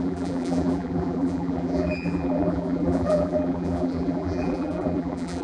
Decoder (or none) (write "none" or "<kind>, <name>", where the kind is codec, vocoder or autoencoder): vocoder, BigVGAN v2